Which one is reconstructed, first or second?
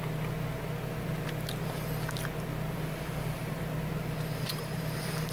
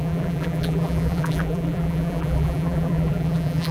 second